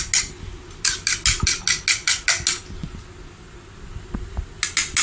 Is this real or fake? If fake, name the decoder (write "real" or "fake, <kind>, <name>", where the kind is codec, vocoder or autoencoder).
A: real